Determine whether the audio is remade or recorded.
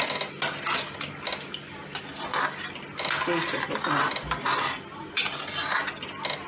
recorded